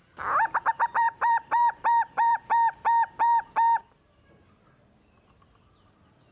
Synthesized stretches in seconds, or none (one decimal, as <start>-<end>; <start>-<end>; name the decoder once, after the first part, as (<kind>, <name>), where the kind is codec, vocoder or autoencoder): 0.7-2.4 (vocoder, BigVGAN v2)